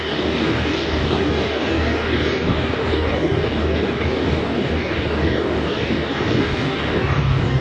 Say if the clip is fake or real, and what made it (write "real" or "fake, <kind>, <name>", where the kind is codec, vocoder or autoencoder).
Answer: fake, codec, DAC